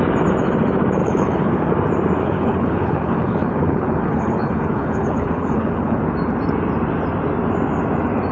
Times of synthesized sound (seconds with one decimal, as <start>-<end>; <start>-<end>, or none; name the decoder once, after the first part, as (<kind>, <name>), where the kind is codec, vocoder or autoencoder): 1.0-1.7 (codec, HILCodec); 2.2-6.0